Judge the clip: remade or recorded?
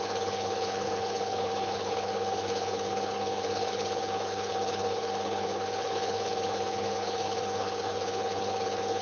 remade